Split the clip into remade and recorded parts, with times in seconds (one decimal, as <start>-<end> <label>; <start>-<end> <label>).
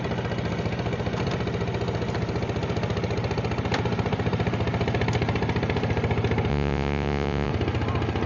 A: 0.0-6.5 recorded; 6.5-7.5 remade; 7.5-8.3 recorded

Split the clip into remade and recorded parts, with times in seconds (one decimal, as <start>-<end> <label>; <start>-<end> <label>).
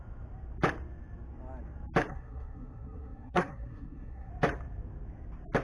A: 0.0-2.1 recorded; 2.1-4.3 remade; 4.3-5.6 recorded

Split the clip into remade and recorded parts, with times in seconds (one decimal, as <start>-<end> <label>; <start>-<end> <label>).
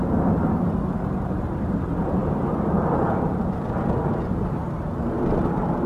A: 0.0-5.9 remade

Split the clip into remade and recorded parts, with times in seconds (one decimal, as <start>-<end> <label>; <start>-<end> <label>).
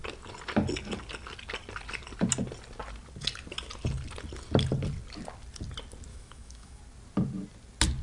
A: 0.0-6.1 recorded; 6.1-6.8 remade; 6.8-8.0 recorded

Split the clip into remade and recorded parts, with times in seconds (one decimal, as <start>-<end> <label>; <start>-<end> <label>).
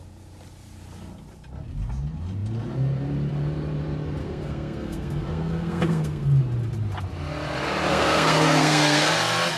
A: 0.0-4.2 recorded; 4.2-6.4 remade; 6.4-7.9 recorded; 7.9-9.1 remade; 9.1-9.6 recorded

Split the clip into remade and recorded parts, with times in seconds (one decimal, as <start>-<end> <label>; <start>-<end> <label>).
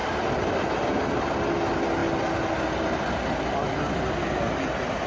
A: 0.0-5.1 recorded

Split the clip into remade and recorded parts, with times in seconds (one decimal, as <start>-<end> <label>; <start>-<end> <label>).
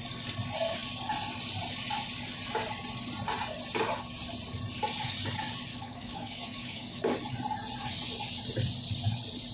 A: 0.0-5.7 recorded; 5.7-7.0 remade; 7.0-9.5 recorded